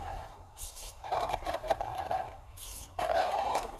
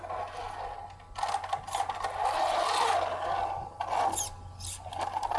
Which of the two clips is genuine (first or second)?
second